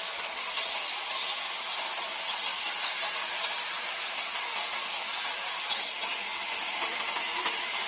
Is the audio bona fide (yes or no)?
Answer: yes